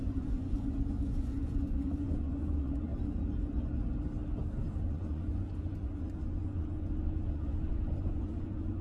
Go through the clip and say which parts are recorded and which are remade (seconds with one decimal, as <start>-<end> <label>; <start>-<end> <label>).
0.0-2.9 remade; 2.9-4.9 recorded; 4.9-8.8 remade